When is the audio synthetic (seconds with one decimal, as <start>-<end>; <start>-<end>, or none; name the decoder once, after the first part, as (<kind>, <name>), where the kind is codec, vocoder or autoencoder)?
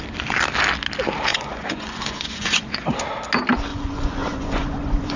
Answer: 1.3-3.0 (vocoder, Vocos); 3.7-5.2